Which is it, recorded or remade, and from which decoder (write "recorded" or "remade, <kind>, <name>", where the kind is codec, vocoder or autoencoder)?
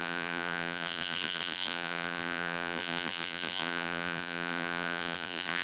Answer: remade, vocoder, BigVGAN v2